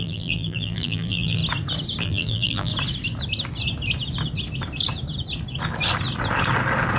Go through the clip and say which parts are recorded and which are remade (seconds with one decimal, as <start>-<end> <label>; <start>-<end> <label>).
0.0-1.4 remade; 1.4-2.0 recorded; 2.0-2.7 remade; 2.7-7.0 recorded